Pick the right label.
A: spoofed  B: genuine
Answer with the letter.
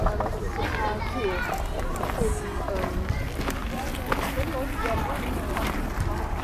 B